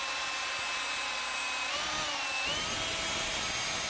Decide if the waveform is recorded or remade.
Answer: recorded